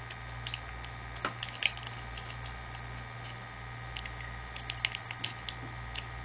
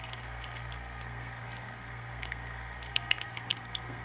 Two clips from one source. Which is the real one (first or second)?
first